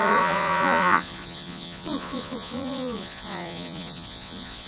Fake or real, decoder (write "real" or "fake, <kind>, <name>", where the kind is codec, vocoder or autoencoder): fake, vocoder, Vocos